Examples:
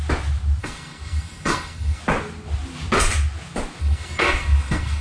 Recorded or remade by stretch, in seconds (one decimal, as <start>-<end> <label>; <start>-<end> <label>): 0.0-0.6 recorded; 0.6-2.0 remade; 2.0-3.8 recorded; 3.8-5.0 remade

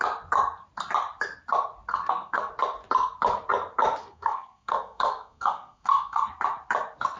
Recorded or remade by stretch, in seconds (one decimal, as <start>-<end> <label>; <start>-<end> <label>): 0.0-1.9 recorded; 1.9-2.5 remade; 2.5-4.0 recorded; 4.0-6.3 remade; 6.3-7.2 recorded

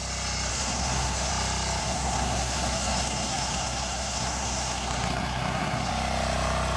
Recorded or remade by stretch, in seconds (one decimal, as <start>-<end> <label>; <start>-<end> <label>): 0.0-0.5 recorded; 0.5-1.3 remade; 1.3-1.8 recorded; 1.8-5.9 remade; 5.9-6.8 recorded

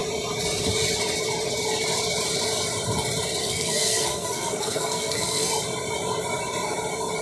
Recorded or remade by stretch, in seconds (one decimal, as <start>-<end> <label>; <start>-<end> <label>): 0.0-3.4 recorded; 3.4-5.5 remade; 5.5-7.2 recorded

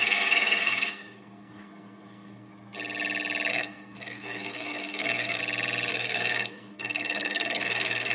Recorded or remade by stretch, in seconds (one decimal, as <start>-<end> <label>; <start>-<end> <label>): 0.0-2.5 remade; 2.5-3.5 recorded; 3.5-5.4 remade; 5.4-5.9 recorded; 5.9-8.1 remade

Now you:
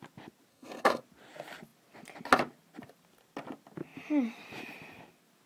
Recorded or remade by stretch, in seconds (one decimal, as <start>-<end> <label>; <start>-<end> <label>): 0.0-0.5 recorded; 0.5-1.0 remade; 1.0-5.5 recorded

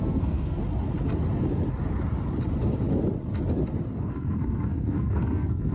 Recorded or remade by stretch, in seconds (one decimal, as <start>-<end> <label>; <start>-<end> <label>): 0.0-0.6 remade; 0.6-4.0 recorded; 4.0-5.7 remade